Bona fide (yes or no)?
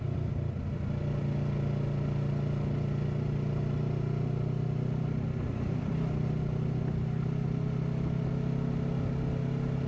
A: yes